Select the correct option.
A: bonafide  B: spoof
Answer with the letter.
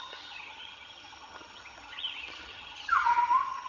B